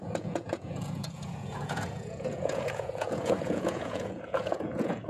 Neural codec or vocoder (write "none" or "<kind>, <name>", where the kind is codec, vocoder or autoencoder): vocoder, Vocos